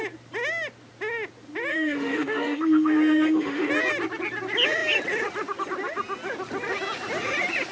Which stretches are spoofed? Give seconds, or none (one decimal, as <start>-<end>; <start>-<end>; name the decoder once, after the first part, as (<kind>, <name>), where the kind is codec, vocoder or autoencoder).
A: 1.7-3.7 (autoencoder, DAC-VAE)